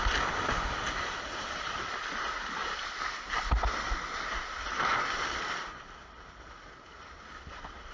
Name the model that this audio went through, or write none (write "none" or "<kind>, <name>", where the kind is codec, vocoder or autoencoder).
none